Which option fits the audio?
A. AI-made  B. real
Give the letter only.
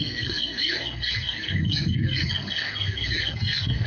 A